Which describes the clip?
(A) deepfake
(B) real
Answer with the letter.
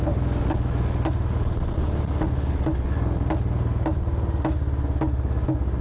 B